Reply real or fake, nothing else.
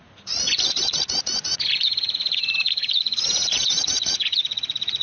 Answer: fake